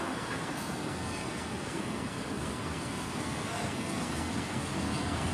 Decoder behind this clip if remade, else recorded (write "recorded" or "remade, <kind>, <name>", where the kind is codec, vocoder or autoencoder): remade, codec, SNAC